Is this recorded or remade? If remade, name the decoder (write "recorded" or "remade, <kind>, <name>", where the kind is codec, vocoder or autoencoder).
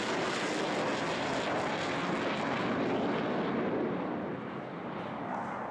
recorded